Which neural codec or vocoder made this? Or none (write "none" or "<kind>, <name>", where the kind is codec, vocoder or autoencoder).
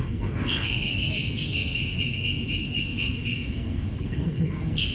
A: codec, SNAC